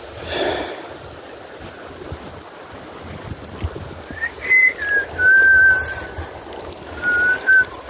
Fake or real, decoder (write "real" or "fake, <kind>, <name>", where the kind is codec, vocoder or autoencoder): real